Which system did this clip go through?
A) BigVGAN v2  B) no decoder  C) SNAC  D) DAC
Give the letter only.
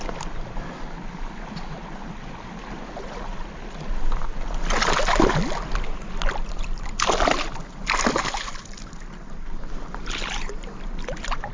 B